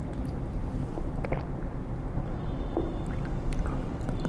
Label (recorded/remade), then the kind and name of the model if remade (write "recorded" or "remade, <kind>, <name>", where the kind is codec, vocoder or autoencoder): recorded